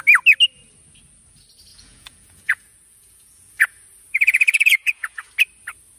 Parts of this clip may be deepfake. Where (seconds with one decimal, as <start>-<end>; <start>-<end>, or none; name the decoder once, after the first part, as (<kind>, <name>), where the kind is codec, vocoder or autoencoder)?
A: 1.7-5.3 (vocoder, Vocos)